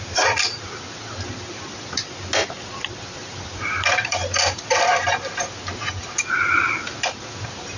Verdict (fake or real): real